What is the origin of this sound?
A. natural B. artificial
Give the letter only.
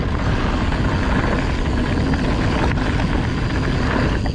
A